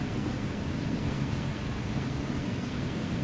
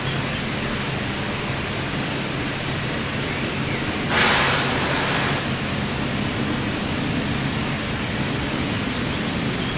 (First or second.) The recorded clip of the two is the second